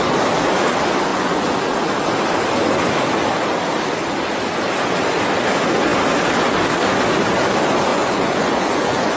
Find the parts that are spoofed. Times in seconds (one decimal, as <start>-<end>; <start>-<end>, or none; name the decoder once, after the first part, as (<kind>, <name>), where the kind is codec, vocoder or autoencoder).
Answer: 1.1-1.6 (vocoder, Vocos); 7.9-9.2